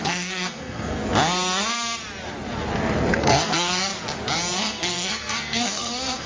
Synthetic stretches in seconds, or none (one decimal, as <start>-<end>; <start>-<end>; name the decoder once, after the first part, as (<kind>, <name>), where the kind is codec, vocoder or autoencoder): 0.0-1.0 (codec, SNAC); 3.2-3.9; 4.6-6.3